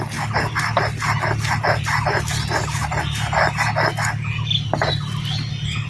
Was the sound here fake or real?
real